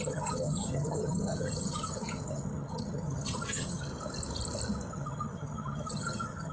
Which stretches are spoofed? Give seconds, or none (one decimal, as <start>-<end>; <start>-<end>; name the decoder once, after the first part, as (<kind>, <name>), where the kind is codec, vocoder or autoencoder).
0.0-3.9 (vocoder, HiFi-GAN); 4.9-6.5

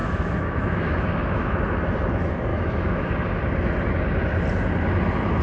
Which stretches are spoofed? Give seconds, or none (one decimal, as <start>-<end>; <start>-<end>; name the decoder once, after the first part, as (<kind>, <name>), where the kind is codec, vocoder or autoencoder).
0.0-1.6 (autoencoder, DAC-VAE); 2.5-3.1

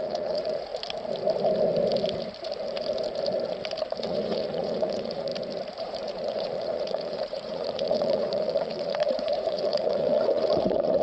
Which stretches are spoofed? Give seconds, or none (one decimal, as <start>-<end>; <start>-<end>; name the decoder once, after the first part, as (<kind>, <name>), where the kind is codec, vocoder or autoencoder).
0.0-0.7 (vocoder, Vocos); 4.0-5.3; 5.8-11.0

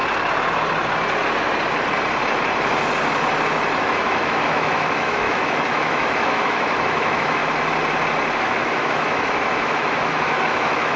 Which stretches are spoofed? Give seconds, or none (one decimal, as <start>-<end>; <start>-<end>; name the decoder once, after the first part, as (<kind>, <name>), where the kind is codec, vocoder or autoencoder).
3.8-7.4 (autoencoder, DAC-VAE); 8.4-11.0

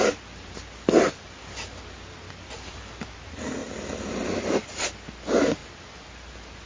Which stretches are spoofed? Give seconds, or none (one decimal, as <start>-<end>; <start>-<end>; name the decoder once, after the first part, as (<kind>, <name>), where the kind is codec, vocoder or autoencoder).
none

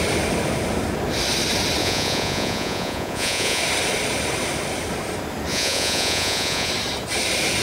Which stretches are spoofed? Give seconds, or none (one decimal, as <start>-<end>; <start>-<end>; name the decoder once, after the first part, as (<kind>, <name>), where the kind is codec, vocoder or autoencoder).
1.8-3.6 (vocoder, Vocos); 5.5-6.7

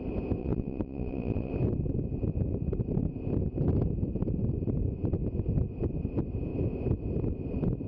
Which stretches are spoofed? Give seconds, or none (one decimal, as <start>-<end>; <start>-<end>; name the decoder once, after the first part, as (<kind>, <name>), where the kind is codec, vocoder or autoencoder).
0.4-1.5 (vocoder, WaveNeXt)

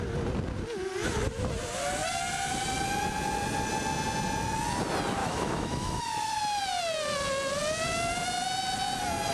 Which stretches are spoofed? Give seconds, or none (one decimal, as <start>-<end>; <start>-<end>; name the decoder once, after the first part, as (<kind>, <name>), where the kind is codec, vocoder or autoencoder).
5.2-6.3 (autoencoder, DAC-VAE)